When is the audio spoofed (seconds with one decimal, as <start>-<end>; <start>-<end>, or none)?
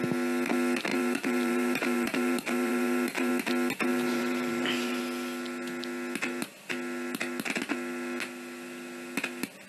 0.9-3.3; 3.9-5.0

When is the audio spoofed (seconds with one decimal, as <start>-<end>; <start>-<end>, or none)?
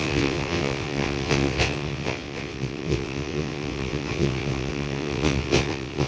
0.0-6.1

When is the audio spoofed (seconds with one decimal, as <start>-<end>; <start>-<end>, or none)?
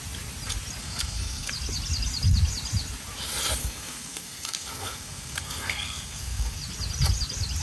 0.8-1.5; 3.6-6.6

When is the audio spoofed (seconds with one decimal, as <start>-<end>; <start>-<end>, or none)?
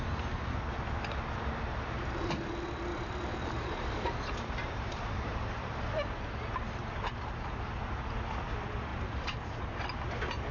2.9-8.0; 8.9-10.0